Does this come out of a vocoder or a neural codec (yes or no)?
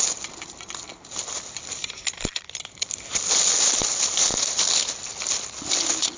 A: no